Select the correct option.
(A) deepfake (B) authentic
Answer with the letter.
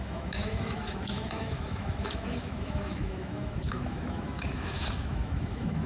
A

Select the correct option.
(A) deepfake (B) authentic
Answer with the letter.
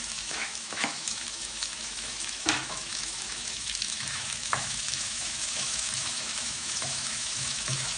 A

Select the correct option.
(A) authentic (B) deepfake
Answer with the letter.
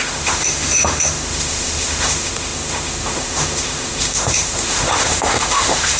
B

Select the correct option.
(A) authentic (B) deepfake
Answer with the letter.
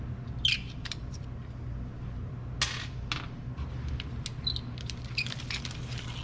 A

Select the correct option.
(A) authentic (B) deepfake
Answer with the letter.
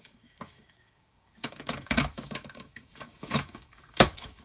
B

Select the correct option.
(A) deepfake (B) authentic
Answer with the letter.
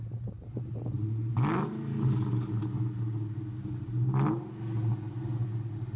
B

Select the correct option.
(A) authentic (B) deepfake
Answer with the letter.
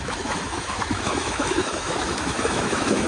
B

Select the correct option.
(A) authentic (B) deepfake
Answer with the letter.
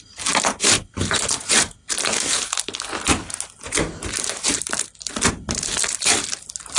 A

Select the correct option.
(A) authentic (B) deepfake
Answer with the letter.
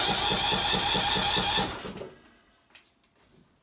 A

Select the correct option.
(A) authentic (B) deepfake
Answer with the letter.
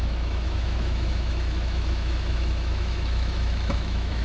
B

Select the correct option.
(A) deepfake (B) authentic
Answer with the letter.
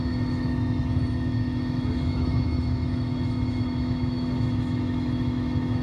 A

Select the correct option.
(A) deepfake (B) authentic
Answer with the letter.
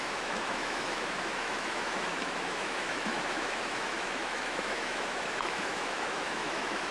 A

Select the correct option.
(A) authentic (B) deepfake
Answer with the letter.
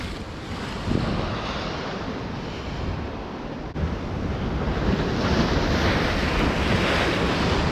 A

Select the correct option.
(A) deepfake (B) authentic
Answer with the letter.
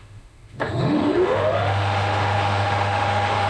A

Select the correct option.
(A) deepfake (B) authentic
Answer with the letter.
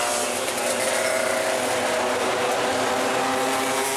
B